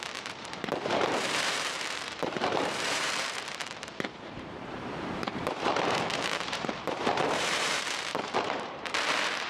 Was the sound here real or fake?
fake